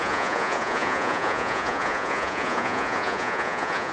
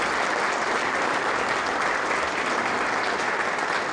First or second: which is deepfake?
first